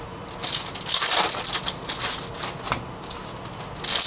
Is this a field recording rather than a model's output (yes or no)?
yes